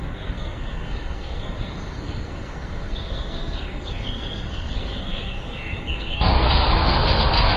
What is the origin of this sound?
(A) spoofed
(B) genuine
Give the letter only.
A